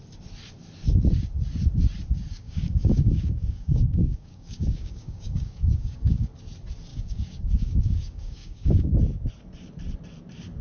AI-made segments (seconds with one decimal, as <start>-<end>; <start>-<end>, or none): 2.3-6.3; 6.9-9.3